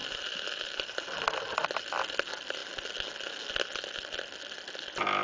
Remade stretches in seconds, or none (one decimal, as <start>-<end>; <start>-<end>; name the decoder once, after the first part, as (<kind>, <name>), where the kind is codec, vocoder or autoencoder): none